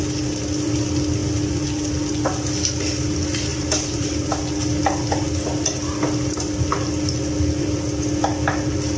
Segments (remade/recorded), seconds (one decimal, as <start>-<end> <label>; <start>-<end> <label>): 0.0-3.5 recorded; 3.5-4.3 remade; 4.3-9.0 recorded